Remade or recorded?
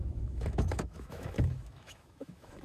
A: remade